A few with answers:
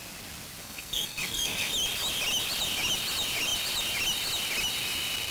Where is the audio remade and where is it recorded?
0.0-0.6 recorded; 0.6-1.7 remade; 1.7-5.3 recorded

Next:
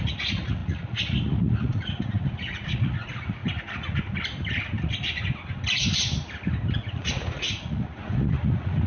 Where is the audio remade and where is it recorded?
0.0-3.4 remade; 3.4-6.9 recorded; 6.9-8.9 remade